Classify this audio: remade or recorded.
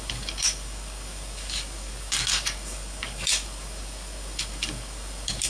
remade